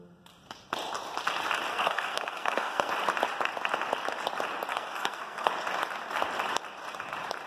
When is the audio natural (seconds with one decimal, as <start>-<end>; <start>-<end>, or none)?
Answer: 0.0-1.7; 2.9-4.7; 5.5-7.5